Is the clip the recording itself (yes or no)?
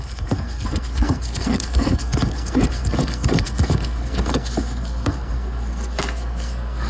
no